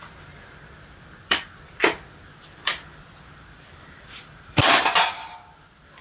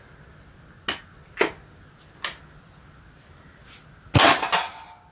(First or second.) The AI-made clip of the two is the first